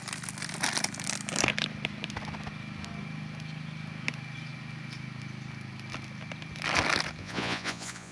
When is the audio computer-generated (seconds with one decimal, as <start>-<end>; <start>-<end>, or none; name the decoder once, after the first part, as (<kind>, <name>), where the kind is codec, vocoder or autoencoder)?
7.2-8.1 (vocoder, Vocos)